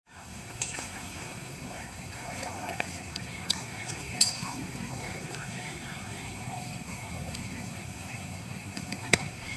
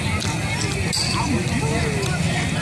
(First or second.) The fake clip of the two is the first